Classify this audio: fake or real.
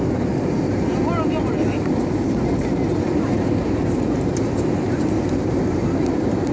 fake